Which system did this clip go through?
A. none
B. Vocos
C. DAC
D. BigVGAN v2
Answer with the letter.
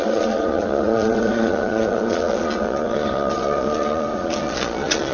B